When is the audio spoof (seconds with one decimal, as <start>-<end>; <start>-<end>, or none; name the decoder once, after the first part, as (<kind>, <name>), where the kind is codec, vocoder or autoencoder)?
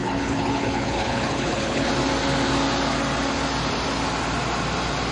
0.0-1.9 (codec, HILCodec)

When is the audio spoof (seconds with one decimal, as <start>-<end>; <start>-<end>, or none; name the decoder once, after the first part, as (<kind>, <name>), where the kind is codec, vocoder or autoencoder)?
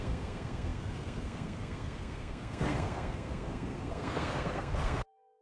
0.0-5.4 (codec, SNAC)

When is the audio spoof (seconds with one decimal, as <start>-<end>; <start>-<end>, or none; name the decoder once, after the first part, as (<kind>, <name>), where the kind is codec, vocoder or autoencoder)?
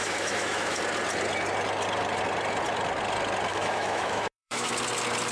0.0-0.8 (autoencoder, DAC-VAE); 3.5-4.7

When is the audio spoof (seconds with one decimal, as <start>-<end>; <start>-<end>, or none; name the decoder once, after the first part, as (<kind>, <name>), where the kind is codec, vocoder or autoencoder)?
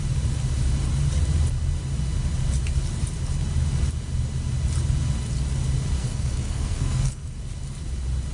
6.0-7.4 (codec, SNAC)